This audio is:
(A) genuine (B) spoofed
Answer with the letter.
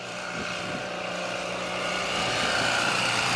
B